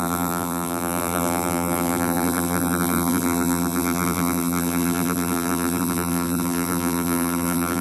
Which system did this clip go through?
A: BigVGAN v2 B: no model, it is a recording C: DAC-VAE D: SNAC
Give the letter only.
A